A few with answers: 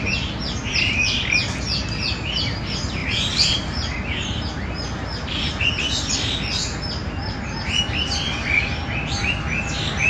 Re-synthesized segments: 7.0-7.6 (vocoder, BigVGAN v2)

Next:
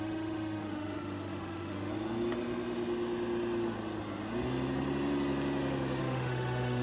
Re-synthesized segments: 0.0-1.9 (autoencoder, DAC-VAE); 6.0-6.8